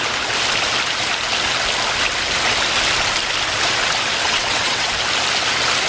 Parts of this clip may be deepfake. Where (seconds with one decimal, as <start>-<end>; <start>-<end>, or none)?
4.2-4.9